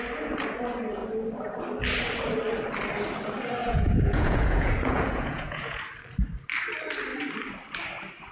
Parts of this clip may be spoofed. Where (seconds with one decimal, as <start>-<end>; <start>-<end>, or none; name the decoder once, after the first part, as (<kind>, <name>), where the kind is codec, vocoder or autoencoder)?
3.6-5.8 (vocoder, Vocos)